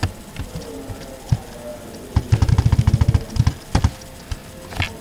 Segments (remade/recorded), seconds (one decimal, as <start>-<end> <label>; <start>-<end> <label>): 0.0-5.0 recorded

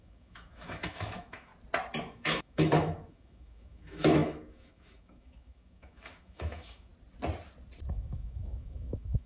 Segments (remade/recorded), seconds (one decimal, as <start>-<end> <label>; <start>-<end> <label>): 0.0-1.5 remade; 1.5-2.0 recorded; 2.0-6.9 remade; 6.9-7.9 recorded; 7.9-9.3 remade

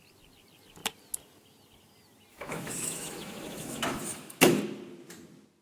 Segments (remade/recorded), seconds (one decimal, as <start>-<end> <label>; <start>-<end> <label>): 0.0-2.3 recorded; 2.3-4.6 remade; 4.6-5.6 recorded

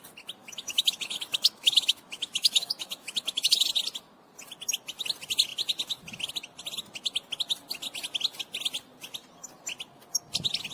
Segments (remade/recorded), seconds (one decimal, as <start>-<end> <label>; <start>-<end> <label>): 0.0-0.4 recorded; 0.4-3.7 remade; 3.7-10.7 recorded